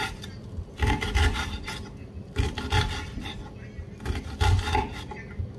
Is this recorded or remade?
recorded